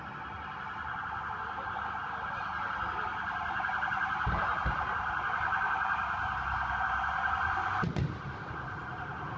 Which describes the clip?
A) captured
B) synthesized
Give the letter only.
A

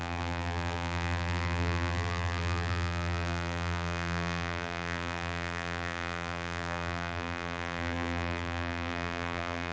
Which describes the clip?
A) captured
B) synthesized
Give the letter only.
B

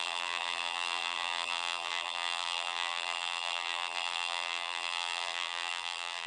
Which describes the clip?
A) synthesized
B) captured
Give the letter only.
A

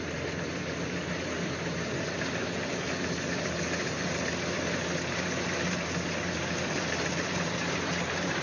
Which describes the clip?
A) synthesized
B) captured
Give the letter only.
A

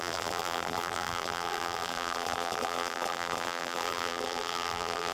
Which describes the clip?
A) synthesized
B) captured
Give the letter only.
A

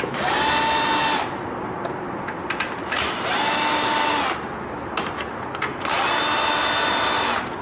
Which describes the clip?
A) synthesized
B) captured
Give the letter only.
B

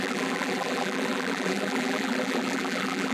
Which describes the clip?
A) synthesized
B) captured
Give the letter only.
A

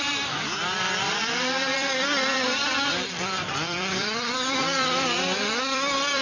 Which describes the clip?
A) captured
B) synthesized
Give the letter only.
B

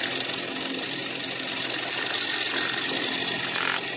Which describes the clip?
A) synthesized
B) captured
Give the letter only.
B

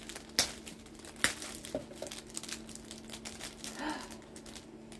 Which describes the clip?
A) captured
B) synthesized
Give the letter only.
A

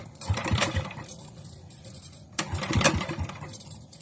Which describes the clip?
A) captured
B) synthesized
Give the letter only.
B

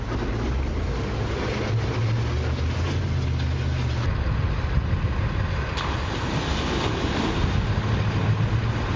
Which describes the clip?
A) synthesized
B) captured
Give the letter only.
B